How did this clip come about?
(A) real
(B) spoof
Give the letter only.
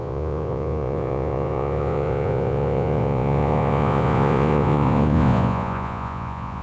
B